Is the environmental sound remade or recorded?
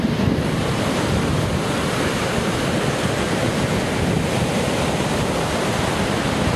recorded